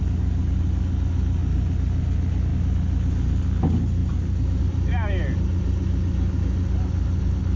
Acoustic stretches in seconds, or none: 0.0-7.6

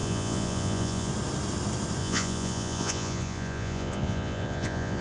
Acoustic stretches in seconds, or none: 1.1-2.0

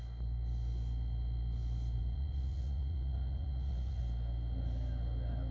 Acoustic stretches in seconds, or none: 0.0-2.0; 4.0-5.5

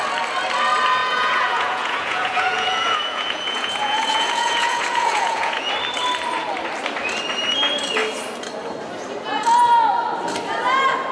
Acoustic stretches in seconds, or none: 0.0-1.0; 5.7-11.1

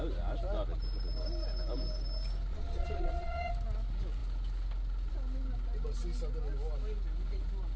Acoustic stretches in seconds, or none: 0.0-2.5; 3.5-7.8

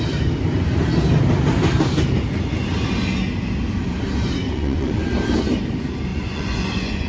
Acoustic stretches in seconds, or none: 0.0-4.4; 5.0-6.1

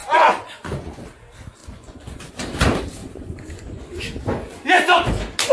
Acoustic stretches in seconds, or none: 1.0-1.6; 2.3-3.0; 4.0-5.5

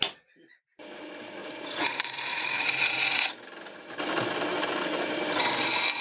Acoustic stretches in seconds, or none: 0.0-1.4; 3.2-6.0